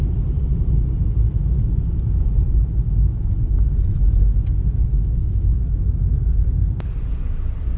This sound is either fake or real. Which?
real